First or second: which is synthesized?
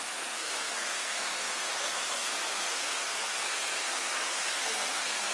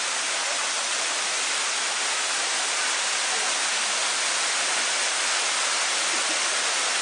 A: first